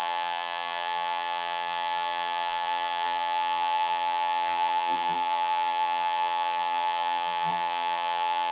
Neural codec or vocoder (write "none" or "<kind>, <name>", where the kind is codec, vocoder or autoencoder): vocoder, BigVGAN v2